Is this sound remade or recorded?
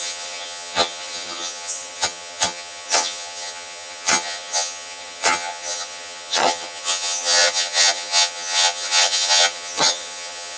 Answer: remade